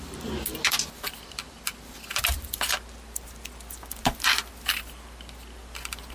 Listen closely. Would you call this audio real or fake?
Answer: real